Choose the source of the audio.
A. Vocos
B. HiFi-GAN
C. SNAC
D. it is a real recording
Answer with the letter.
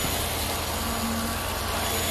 D